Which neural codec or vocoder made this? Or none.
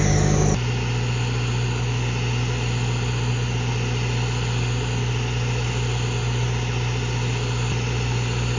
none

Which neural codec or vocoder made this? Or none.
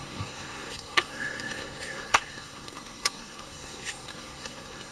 codec, SNAC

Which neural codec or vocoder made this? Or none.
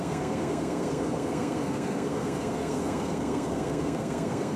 codec, SNAC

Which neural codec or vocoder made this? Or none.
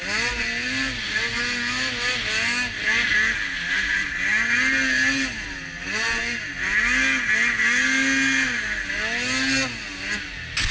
none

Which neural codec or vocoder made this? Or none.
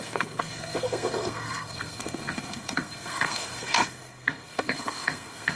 codec, SNAC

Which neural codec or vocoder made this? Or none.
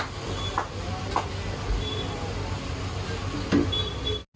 none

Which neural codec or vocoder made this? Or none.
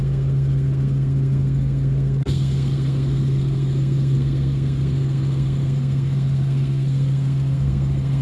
codec, SNAC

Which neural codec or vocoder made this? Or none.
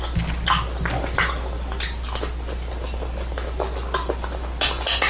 none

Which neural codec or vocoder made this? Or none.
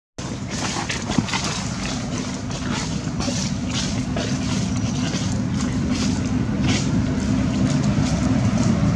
none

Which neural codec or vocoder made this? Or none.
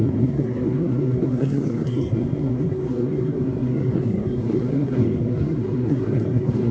codec, SNAC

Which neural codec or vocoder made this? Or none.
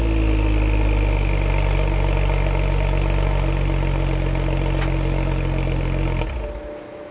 none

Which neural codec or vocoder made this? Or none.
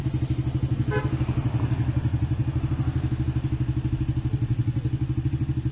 none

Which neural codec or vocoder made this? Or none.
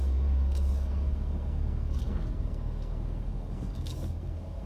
codec, SNAC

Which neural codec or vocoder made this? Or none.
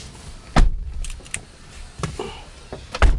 none